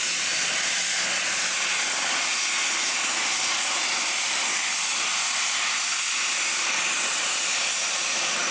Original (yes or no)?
yes